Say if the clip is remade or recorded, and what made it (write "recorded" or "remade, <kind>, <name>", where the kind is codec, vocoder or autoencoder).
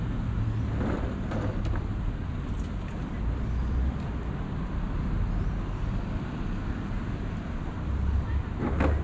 recorded